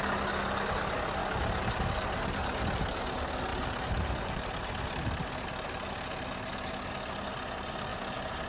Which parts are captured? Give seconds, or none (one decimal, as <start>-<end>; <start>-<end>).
0.0-1.2; 1.7-3.5; 4.4-7.9